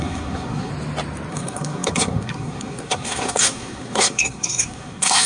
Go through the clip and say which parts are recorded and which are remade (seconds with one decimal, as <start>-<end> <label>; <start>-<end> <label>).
0.0-0.7 remade; 0.7-1.3 recorded; 1.3-5.3 remade